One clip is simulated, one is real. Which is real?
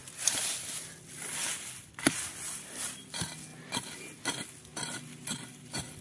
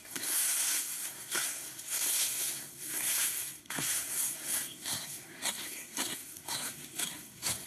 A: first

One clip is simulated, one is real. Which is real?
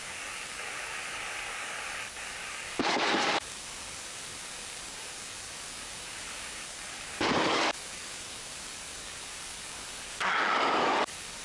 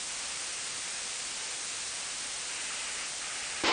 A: second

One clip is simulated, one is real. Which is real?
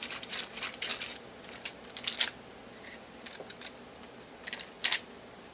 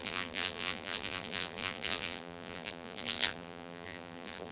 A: first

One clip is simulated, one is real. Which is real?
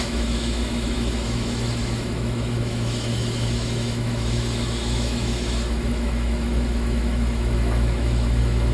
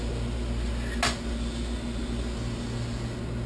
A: second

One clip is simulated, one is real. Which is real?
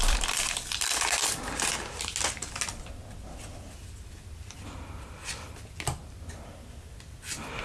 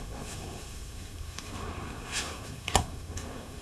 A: first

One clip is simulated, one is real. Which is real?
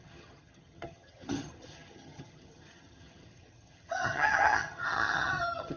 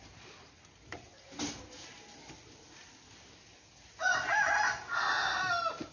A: second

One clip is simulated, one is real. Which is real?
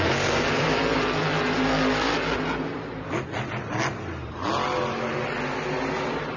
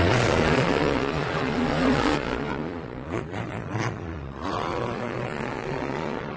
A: first